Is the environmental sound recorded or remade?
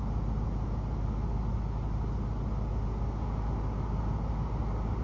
recorded